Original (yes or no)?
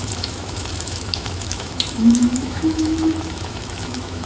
no